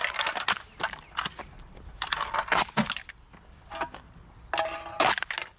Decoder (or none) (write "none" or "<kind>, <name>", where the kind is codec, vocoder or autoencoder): none